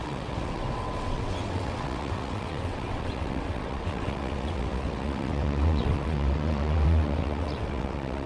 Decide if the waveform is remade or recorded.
remade